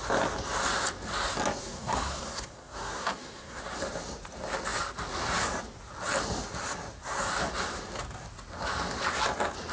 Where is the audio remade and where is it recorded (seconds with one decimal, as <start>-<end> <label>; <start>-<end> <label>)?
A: 0.0-1.6 recorded; 1.6-3.6 remade; 3.6-9.7 recorded